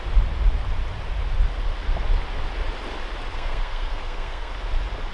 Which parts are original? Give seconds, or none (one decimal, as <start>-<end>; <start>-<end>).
0.0-3.3; 4.5-5.1